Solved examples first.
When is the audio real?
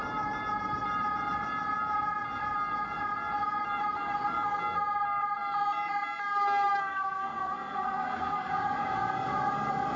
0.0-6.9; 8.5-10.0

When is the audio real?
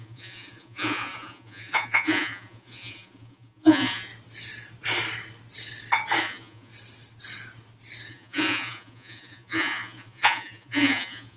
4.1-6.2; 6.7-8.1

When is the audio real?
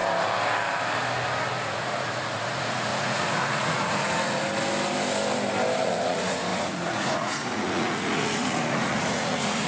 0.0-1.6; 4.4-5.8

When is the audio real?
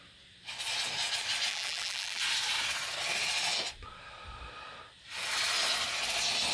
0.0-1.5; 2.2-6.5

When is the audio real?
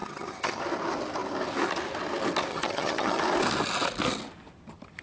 0.6-2.5; 3.2-5.0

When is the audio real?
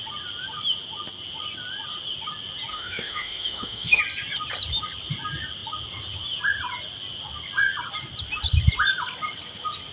0.0-2.7; 4.0-9.9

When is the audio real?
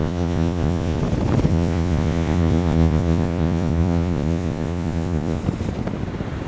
1.0-1.5; 5.4-6.5